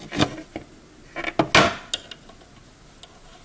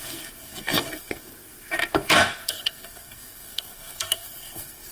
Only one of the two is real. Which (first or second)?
first